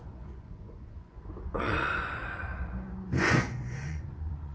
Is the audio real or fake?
fake